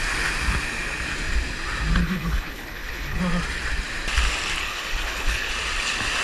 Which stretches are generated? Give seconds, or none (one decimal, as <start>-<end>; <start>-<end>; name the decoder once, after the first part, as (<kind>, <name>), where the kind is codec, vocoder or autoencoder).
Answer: 2.0-3.2 (codec, HILCodec); 4.6-5.5